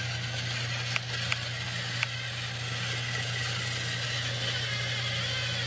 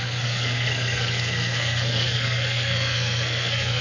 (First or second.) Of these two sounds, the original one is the first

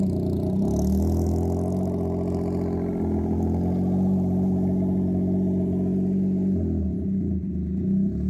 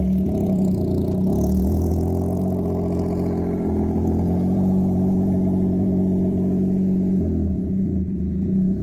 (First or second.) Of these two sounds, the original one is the first